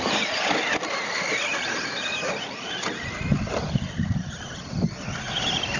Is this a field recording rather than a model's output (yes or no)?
yes